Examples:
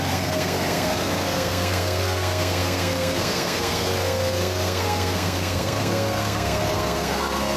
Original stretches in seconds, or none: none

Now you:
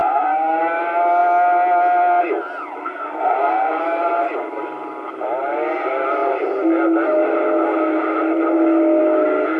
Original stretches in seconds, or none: 0.6-2.8; 3.8-9.6

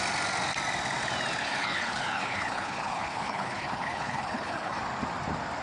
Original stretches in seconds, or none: 0.0-1.4; 4.8-5.6